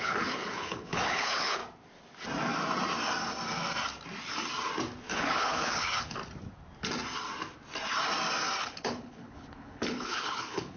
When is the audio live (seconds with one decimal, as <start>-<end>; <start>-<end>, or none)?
1.6-5.1; 6.2-8.6